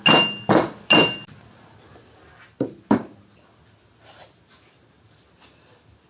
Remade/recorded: recorded